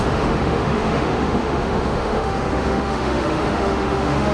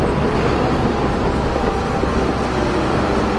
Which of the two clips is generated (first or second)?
first